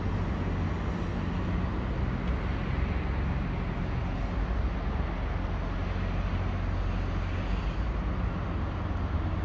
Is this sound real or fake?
real